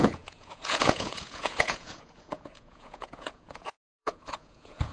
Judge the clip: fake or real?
fake